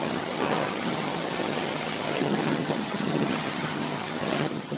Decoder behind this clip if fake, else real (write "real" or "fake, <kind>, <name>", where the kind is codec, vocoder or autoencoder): fake, vocoder, HiFi-GAN